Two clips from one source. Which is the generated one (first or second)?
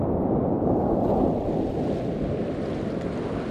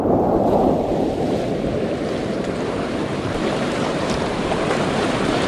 second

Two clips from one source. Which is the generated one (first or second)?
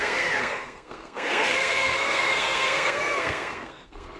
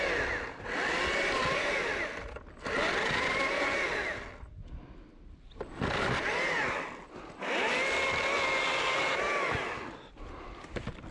first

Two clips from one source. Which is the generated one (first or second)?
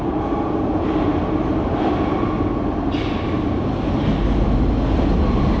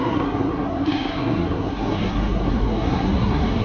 second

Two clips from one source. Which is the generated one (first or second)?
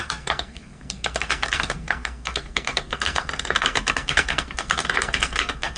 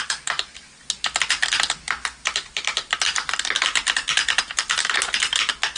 first